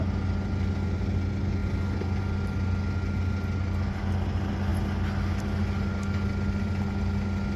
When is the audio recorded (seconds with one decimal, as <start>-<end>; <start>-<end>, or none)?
0.0-7.6

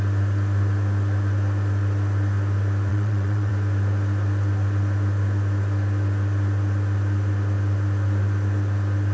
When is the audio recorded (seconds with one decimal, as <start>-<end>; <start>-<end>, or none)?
0.0-2.9; 3.5-9.1

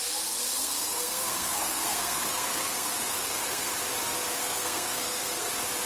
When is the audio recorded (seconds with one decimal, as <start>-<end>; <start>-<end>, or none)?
0.0-0.5; 3.7-4.4; 5.5-5.9

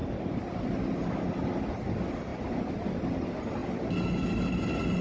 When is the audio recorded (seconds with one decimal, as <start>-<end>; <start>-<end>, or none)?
0.0-5.0

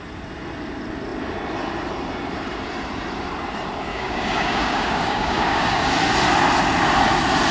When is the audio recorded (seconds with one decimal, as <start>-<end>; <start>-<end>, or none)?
0.0-3.9; 5.8-7.5

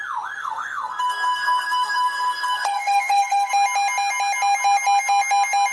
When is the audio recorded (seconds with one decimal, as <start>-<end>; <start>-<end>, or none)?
0.0-0.4; 3.5-5.7

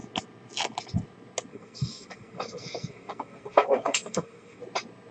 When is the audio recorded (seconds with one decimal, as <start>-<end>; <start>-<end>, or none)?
0.0-1.5; 4.6-5.1

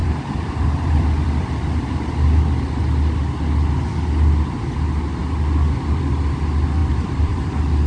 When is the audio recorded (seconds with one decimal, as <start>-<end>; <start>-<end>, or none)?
1.8-6.8